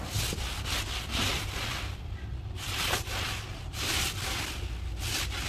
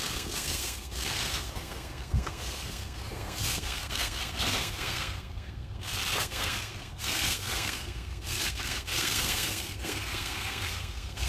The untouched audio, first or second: first